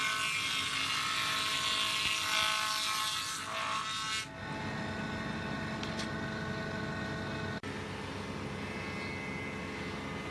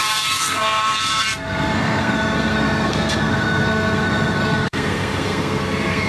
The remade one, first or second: second